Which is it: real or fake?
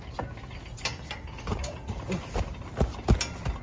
real